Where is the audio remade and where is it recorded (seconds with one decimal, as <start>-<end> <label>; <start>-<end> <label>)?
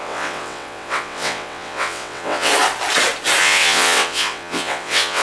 0.0-2.5 remade; 2.5-3.4 recorded; 3.4-5.2 remade